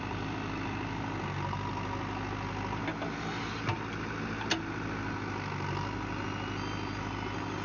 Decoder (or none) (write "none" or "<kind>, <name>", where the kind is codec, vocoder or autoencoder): none